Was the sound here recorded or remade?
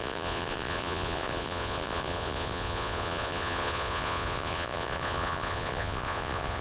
remade